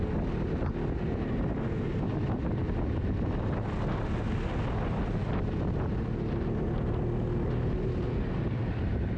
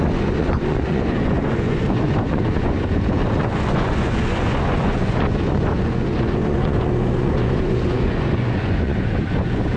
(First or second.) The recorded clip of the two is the first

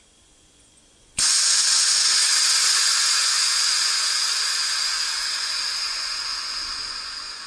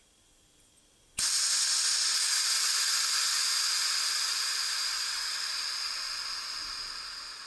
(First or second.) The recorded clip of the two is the second